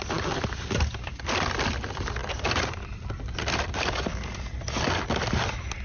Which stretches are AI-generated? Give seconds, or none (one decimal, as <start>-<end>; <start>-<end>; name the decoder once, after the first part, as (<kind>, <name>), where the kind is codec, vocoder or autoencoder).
none